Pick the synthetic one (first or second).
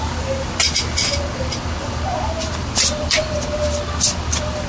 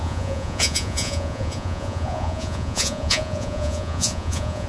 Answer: second